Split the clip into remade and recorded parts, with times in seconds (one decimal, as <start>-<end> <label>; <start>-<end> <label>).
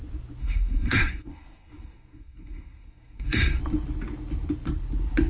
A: 0.0-0.4 recorded; 0.4-3.6 remade; 3.6-5.3 recorded